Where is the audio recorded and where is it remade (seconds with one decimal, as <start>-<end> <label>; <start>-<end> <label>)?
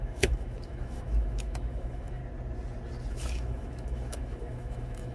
0.0-2.2 remade; 2.2-3.1 recorded; 3.1-5.1 remade